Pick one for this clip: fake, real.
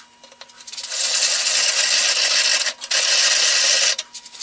real